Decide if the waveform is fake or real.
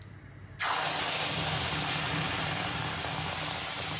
real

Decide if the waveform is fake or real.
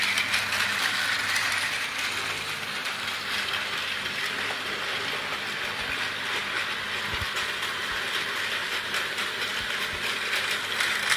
real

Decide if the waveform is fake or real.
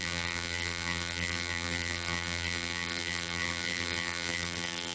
fake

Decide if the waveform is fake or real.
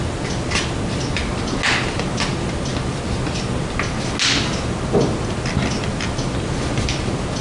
real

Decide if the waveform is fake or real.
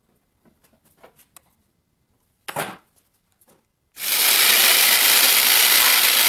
real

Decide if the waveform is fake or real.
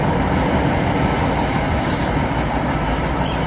real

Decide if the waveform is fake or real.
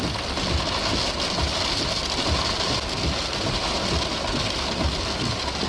real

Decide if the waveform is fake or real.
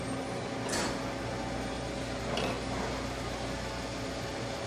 real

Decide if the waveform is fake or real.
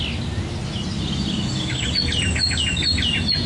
real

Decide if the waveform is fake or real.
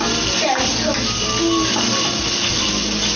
real